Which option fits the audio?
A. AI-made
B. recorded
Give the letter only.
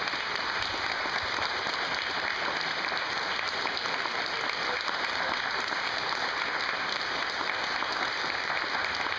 A